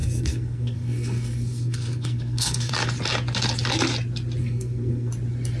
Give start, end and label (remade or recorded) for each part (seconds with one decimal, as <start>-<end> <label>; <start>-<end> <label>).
0.0-2.7 remade; 2.7-4.4 recorded; 4.4-5.1 remade; 5.1-5.6 recorded